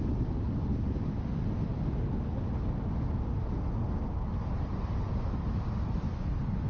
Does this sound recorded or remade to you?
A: recorded